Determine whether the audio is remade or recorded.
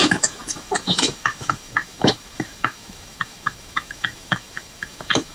remade